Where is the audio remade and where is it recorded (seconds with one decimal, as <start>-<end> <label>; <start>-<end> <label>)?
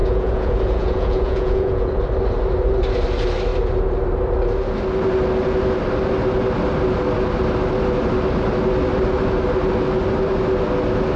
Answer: 0.0-2.0 remade; 2.0-11.2 recorded